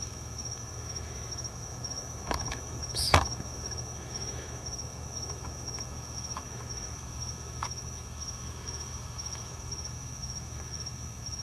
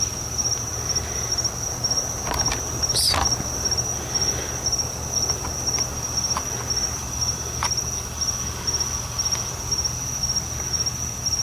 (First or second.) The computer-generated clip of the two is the first